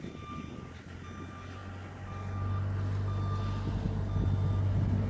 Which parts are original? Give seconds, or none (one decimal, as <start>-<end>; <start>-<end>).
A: 0.0-5.1